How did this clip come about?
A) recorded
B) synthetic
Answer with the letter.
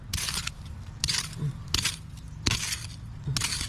B